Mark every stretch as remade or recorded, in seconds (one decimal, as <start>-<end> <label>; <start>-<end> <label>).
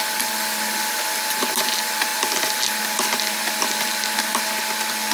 0.0-5.1 recorded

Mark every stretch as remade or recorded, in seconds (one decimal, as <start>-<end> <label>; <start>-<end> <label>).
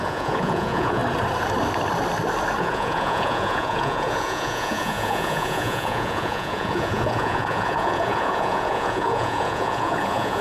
0.0-1.0 remade; 1.0-2.6 recorded; 2.6-10.4 remade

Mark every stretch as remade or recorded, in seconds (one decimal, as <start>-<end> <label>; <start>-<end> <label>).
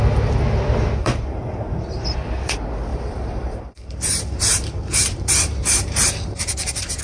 0.0-1.0 recorded; 1.0-1.6 remade; 1.6-2.9 recorded; 2.9-7.0 remade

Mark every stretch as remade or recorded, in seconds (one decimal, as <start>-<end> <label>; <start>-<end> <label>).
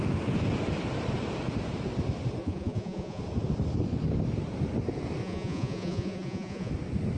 0.0-2.4 recorded; 2.4-3.2 remade; 3.2-5.2 recorded; 5.2-6.7 remade; 6.7-7.2 recorded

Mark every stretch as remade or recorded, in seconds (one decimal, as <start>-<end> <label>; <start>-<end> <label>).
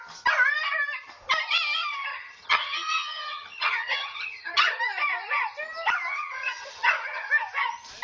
0.0-2.1 recorded; 2.1-4.8 remade; 4.8-6.1 recorded; 6.1-7.3 remade; 7.3-8.0 recorded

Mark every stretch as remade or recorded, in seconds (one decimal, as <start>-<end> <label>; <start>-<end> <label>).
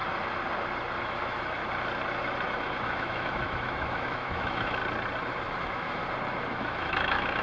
0.0-1.0 recorded; 1.0-1.6 remade; 1.6-2.6 recorded; 2.6-4.8 remade; 4.8-5.6 recorded; 5.6-6.0 remade; 6.0-6.5 recorded; 6.5-7.4 remade